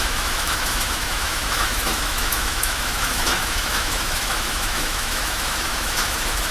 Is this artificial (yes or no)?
yes